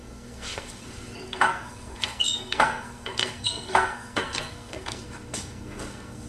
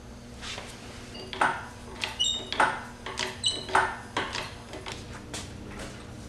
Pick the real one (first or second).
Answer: second